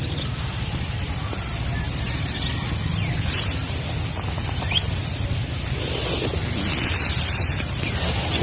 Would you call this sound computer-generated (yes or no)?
no